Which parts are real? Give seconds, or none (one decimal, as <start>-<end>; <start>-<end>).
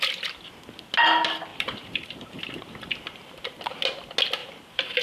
0.0-1.5; 2.5-4.4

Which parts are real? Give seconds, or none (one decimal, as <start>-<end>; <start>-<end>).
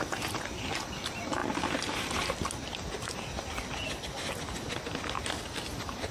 0.0-6.1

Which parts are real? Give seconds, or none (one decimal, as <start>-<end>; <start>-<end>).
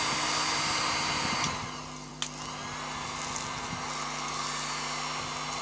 0.0-5.6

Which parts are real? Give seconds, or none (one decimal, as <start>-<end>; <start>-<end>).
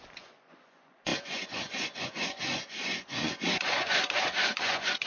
none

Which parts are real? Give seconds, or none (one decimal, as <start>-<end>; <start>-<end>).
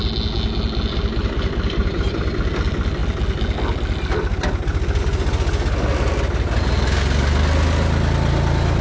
0.0-1.8; 2.4-8.8